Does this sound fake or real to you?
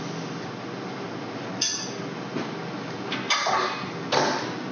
real